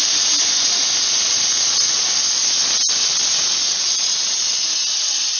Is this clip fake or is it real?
real